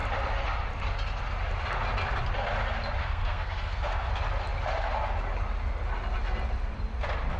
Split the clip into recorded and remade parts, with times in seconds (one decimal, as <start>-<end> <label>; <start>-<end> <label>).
0.0-3.0 recorded; 3.0-4.1 remade; 4.1-7.4 recorded